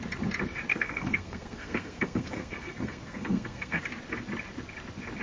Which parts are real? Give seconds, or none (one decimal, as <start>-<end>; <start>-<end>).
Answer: 0.0-0.7; 3.8-5.2